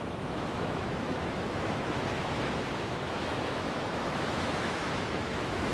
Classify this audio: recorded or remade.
remade